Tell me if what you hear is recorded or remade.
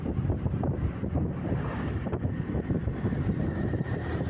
remade